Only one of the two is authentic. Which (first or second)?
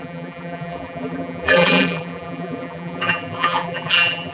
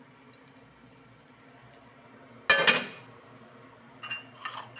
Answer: second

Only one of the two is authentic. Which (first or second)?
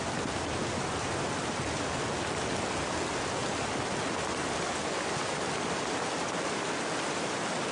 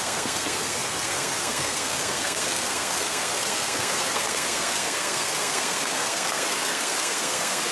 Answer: first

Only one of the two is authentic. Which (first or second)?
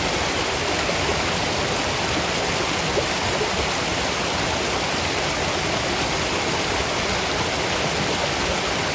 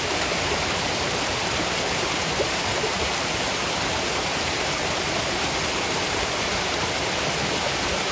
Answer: first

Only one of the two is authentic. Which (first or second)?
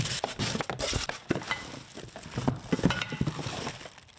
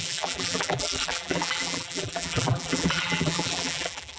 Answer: first